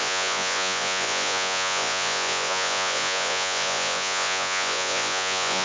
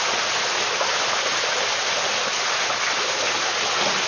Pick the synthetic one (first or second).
first